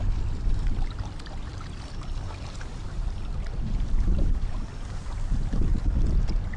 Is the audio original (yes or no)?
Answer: no